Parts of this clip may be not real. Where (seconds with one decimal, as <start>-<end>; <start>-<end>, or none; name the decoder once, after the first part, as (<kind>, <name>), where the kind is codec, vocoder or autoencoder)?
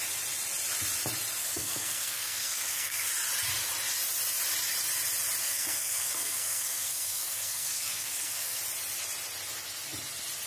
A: 1.4-3.1 (codec, SNAC); 5.4-8.6